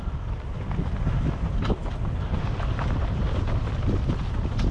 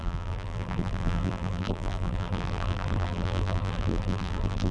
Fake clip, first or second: second